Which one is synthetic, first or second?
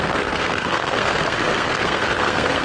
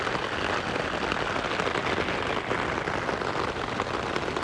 first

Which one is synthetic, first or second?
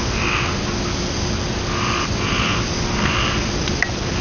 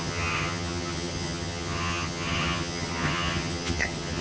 second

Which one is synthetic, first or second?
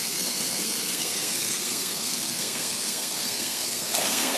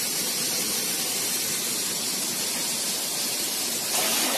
first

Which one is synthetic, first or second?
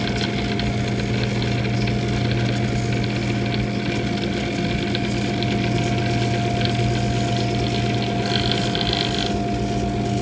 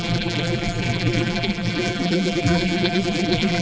second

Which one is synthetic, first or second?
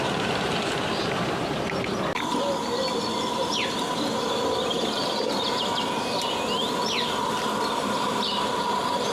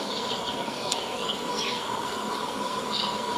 second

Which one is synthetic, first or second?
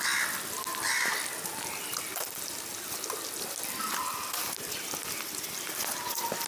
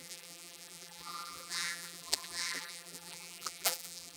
second